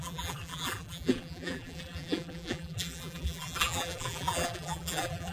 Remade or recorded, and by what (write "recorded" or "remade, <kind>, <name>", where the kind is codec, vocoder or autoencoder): remade, vocoder, BigVGAN v2